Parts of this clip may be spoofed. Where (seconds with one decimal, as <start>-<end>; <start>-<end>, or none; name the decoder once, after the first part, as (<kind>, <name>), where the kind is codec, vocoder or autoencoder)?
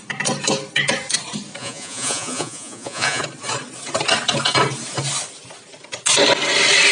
1.6-3.2 (vocoder, Vocos)